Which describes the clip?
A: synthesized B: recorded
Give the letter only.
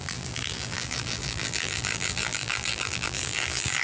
A